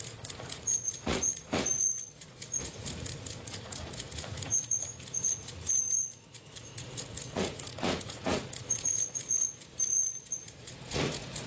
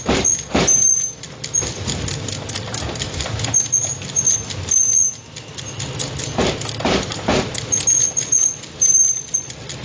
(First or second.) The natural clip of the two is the second